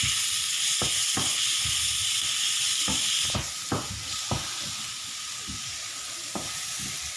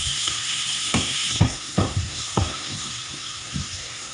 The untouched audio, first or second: first